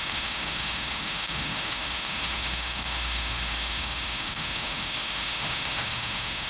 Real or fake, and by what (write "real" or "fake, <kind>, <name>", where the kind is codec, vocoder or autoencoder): fake, autoencoder, DAC-VAE